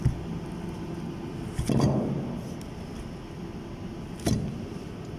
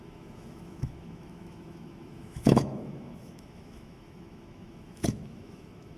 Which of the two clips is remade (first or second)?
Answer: second